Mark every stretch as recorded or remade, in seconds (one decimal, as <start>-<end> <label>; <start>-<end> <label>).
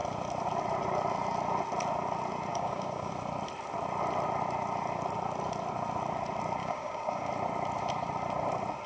0.0-2.5 recorded; 2.5-3.1 remade; 3.1-6.6 recorded; 6.6-7.3 remade; 7.3-8.9 recorded